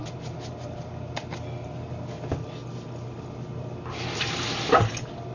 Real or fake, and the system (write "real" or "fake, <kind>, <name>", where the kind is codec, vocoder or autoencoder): real